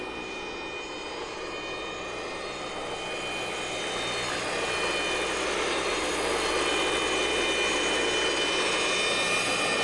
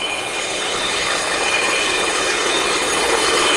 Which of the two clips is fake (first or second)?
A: second